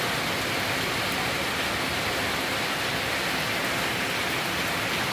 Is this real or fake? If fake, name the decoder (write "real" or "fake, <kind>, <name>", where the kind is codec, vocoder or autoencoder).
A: real